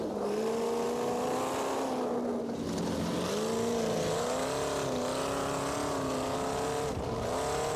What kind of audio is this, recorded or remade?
recorded